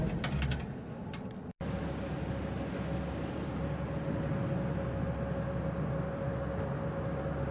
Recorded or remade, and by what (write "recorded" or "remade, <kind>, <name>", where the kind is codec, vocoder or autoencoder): recorded